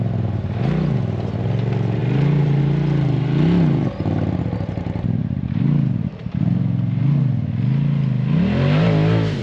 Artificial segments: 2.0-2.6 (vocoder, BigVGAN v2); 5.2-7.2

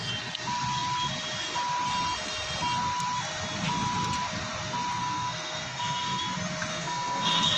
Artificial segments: 5.0-6.2 (codec, SNAC); 6.7-7.6